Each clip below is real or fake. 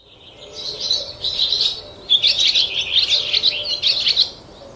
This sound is real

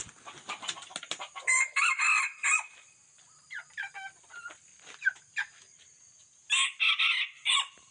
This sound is real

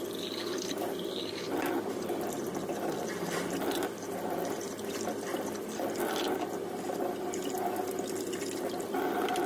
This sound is real